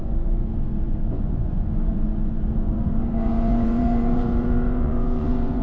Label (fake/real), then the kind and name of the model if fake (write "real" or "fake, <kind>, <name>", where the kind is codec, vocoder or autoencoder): fake, vocoder, Vocos